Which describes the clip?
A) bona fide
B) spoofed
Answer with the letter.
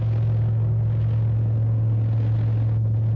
A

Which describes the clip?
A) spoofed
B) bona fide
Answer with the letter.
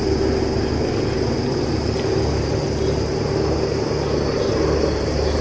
B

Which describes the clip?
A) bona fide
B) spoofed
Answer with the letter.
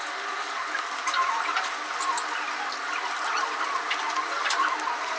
A